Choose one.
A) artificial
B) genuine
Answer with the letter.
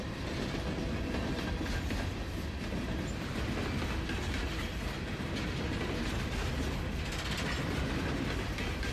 B